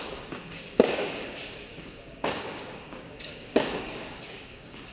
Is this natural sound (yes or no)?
no